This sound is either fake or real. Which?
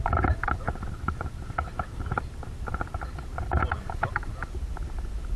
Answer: real